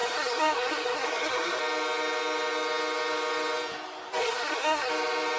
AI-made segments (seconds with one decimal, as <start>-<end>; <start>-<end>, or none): 0.0-1.6; 4.2-4.9